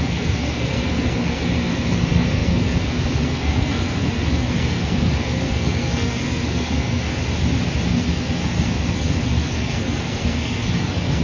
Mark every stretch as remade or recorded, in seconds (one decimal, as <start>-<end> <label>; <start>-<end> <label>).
0.0-7.2 remade; 7.2-7.9 recorded; 7.9-11.2 remade